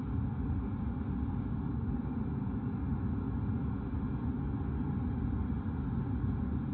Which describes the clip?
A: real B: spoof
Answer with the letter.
A